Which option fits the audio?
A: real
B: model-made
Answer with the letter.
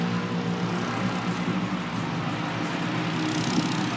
A